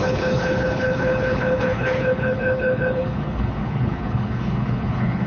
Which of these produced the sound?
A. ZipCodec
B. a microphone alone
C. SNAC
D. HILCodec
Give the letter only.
D